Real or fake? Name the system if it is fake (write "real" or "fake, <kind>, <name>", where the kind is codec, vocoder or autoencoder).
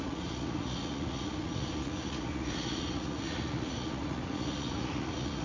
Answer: fake, vocoder, Vocos